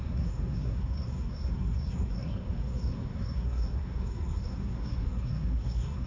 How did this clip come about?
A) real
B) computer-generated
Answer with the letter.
B